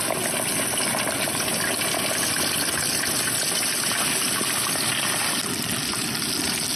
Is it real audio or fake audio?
real